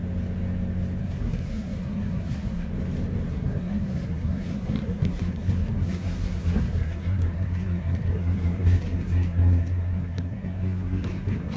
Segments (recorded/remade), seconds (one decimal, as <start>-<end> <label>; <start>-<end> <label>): 0.0-1.0 recorded; 1.0-2.7 remade; 2.7-3.3 recorded; 3.3-11.6 remade